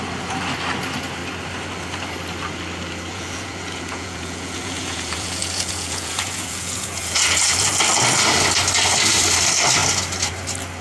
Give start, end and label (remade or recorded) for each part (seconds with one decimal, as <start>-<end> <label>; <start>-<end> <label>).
0.0-3.1 recorded; 3.1-7.7 remade; 7.7-10.8 recorded